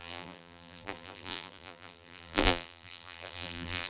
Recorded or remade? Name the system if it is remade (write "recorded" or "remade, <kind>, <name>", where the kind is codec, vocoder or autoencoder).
remade, vocoder, BigVGAN v2